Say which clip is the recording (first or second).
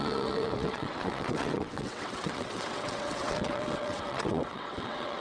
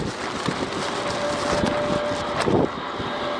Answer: second